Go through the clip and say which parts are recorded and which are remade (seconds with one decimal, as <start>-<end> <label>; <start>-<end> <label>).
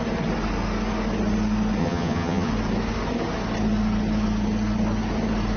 0.0-1.8 recorded; 1.8-2.5 remade; 2.5-5.6 recorded